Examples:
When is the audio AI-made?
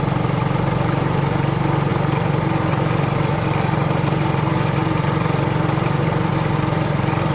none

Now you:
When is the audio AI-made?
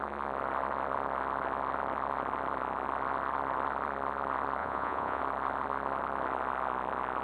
4.6-5.2 (vocoder, Vocos)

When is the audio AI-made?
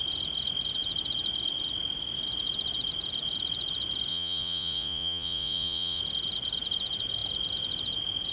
4.1-6.0 (vocoder, Vocos)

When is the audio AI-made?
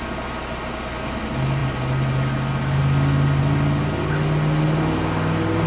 none